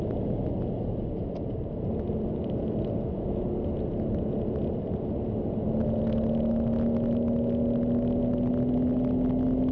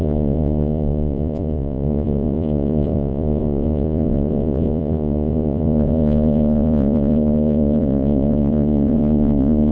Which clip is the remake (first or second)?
second